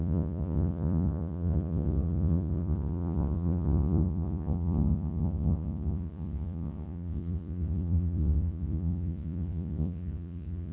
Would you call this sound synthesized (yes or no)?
yes